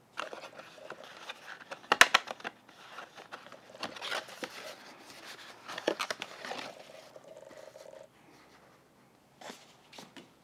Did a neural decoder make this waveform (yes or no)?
no